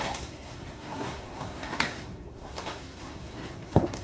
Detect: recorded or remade remade